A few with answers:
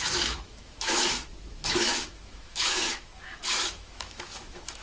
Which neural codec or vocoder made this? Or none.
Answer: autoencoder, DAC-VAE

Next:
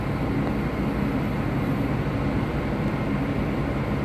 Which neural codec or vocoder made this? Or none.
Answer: none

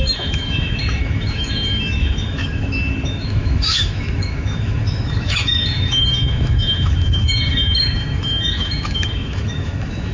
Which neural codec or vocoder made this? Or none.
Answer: autoencoder, DAC-VAE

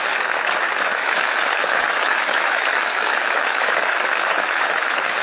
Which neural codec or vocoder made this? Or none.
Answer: autoencoder, DAC-VAE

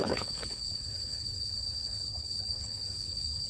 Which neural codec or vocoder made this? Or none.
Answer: codec, HILCodec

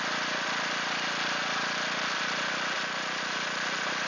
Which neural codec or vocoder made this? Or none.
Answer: none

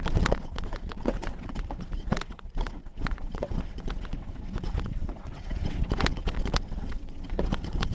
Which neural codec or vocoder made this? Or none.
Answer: vocoder, WaveNeXt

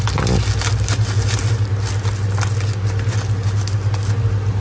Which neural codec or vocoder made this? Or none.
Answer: none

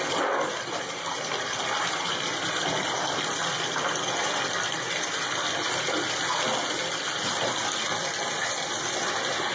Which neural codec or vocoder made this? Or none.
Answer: none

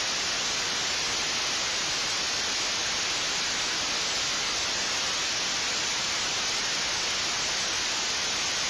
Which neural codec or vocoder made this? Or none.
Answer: none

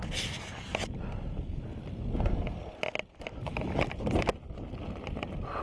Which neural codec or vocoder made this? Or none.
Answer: none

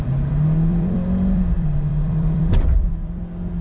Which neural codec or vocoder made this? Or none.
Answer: vocoder, BigVGAN v2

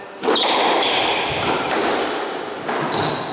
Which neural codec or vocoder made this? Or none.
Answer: vocoder, BigVGAN v2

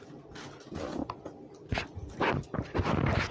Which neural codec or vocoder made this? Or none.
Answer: none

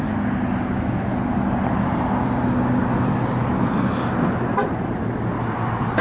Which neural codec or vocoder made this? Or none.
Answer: none